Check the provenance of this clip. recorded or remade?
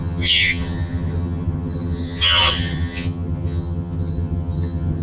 remade